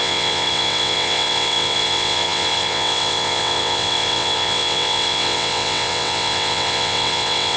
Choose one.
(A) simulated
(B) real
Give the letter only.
A